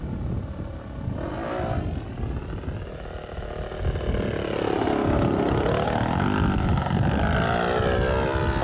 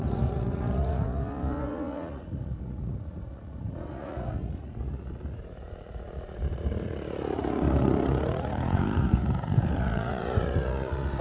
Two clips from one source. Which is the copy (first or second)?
second